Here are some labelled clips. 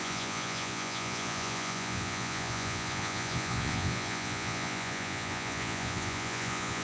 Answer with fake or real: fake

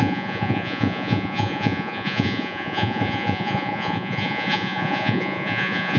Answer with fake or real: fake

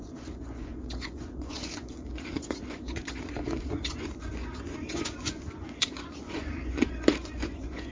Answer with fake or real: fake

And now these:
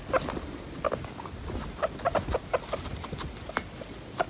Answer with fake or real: real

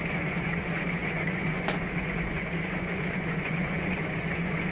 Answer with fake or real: fake